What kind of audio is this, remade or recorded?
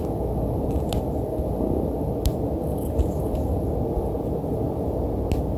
recorded